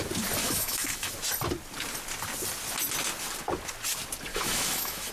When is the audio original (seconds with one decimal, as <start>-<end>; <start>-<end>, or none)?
0.0-0.4; 1.1-4.3